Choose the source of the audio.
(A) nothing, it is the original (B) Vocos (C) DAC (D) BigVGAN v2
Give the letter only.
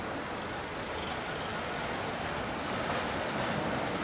A